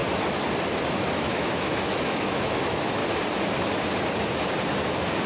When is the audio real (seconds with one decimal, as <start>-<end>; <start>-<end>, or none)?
0.0-1.1; 3.0-5.3